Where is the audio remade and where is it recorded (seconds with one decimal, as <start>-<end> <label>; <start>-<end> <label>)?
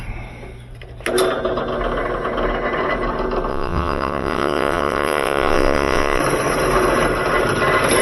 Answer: 0.0-3.5 recorded; 3.5-6.2 remade; 6.2-8.0 recorded